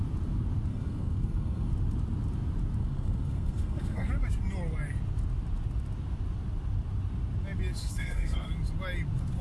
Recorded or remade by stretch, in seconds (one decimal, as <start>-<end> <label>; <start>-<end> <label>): 0.0-0.7 recorded; 0.7-1.7 remade; 1.7-2.8 recorded; 2.8-4.1 remade; 4.1-7.8 recorded; 7.8-8.5 remade; 8.5-9.4 recorded